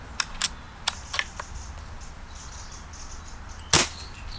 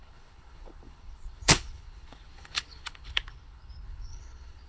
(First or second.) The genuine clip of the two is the first